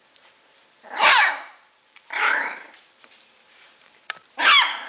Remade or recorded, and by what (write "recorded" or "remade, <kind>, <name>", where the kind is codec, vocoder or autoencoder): remade, vocoder, BigVGAN v2